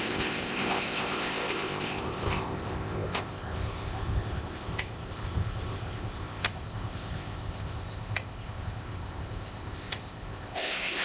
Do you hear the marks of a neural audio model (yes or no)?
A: yes